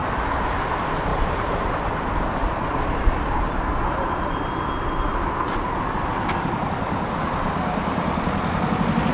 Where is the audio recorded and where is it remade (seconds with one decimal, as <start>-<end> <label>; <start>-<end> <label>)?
0.0-9.1 recorded